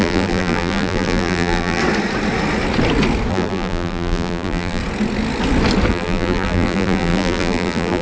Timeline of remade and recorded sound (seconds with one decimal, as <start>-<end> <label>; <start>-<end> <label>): 0.0-1.8 remade; 1.8-3.3 recorded; 3.3-4.8 remade; 4.8-5.9 recorded; 5.9-8.0 remade